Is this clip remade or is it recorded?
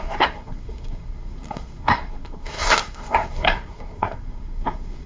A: remade